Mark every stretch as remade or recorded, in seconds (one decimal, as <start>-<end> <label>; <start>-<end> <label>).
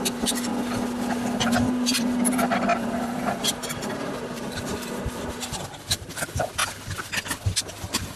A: 0.0-0.5 remade; 0.5-1.4 recorded; 1.4-6.6 remade; 6.6-7.7 recorded; 7.7-8.2 remade